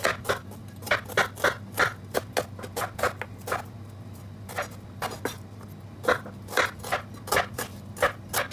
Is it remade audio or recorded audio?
recorded